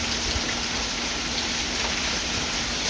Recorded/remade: recorded